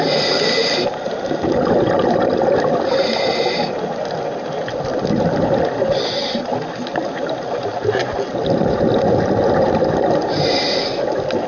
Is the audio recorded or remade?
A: recorded